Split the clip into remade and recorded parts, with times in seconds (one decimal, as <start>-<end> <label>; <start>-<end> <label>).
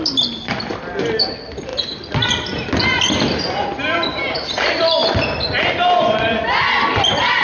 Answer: 0.0-1.7 remade; 1.7-4.3 recorded; 4.3-7.4 remade